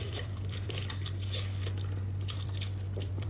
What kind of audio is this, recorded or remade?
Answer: remade